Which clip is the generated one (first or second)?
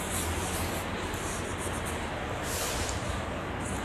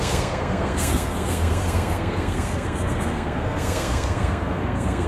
second